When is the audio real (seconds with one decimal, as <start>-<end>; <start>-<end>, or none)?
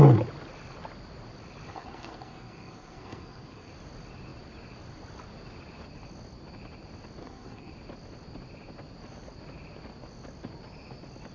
0.0-1.7; 3.7-7.2; 7.7-11.3